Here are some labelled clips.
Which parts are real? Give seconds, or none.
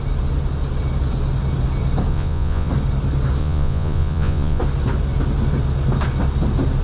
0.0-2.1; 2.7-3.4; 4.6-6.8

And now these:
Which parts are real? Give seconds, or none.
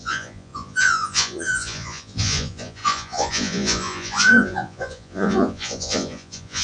none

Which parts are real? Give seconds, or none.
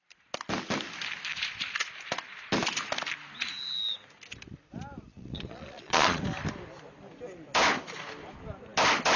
0.0-5.1; 6.2-9.2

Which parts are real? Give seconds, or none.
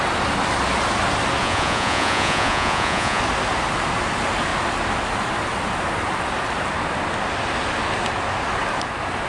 0.0-1.4; 3.2-9.3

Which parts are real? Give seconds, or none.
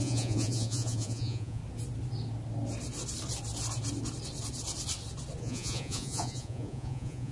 1.6-5.4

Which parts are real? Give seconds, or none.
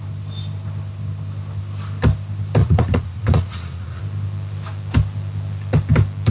0.0-2.6; 4.0-6.3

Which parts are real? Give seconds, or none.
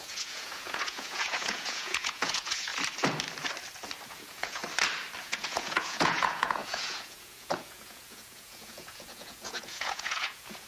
2.7-4.1; 4.6-5.2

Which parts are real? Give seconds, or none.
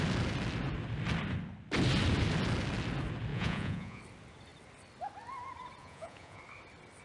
0.0-3.3; 4.0-5.8; 6.4-7.0